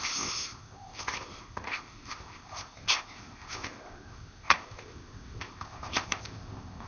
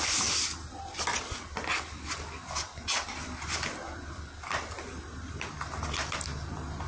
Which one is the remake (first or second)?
first